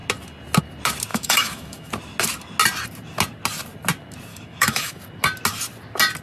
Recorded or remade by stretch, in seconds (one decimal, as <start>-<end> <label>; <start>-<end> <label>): 0.0-1.1 recorded; 1.1-1.9 remade; 1.9-4.3 recorded; 4.3-5.0 remade; 5.0-6.2 recorded